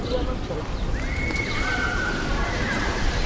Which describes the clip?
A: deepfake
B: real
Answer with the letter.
B